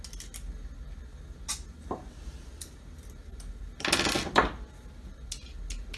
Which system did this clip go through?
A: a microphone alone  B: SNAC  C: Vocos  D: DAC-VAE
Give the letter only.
A